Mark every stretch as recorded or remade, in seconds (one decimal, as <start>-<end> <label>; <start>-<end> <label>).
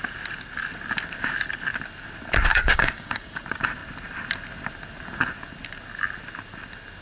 0.0-2.5 recorded; 2.5-3.4 remade; 3.4-7.0 recorded